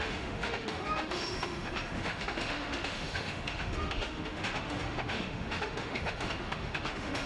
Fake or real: fake